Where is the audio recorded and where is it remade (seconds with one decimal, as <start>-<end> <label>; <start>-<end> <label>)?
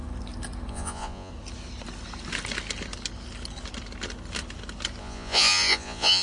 0.0-0.7 recorded; 0.7-1.3 remade; 1.3-5.0 recorded; 5.0-6.2 remade